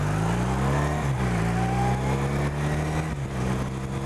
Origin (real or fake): real